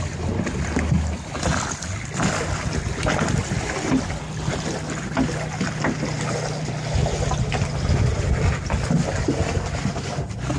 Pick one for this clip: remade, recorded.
recorded